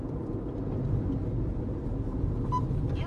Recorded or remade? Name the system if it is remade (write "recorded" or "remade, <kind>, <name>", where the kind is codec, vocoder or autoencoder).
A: recorded